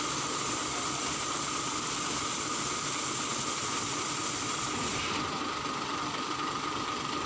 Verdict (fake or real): fake